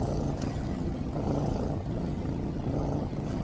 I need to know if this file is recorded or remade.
remade